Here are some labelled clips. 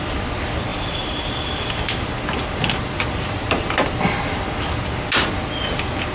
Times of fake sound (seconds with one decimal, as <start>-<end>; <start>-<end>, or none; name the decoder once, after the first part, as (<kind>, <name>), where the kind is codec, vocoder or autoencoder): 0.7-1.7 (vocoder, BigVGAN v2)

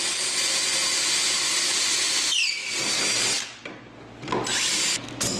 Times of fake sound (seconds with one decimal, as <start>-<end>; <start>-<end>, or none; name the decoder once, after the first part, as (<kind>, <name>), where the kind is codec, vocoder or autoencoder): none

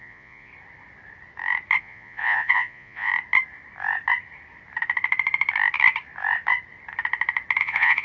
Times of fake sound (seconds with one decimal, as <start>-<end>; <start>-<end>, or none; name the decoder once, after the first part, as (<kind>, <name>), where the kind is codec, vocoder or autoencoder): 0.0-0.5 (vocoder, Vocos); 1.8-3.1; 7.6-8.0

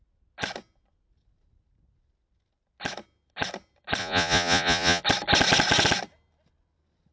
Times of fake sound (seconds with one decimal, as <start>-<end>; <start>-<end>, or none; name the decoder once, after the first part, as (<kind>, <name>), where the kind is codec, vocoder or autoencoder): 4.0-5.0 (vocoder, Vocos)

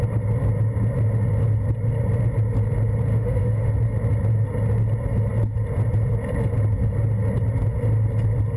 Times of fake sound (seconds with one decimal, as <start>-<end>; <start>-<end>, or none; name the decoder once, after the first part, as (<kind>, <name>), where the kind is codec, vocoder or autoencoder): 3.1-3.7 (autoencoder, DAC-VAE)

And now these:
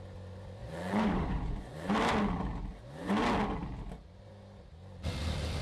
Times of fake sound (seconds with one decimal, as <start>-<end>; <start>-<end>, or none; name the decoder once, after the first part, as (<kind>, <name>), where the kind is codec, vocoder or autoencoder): 0.6-1.9 (vocoder, Vocos)

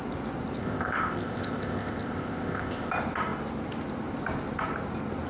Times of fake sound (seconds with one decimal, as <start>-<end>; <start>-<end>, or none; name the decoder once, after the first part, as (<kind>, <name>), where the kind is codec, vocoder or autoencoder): 0.6-2.9 (codec, ZipCodec)